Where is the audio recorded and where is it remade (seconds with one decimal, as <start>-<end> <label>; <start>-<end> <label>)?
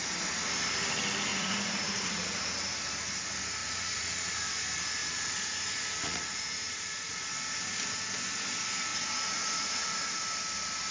0.0-1.3 recorded; 1.3-2.7 remade; 2.7-3.6 recorded; 3.6-4.4 remade; 4.4-5.0 recorded; 5.0-7.3 remade; 7.3-8.9 recorded; 8.9-10.2 remade; 10.2-10.9 recorded